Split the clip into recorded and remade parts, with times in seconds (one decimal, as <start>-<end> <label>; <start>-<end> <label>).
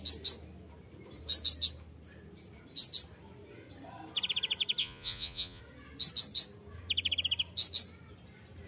0.0-4.8 recorded; 4.8-5.6 remade; 5.6-8.7 recorded